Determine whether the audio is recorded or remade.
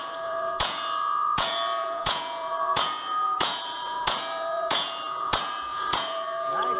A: remade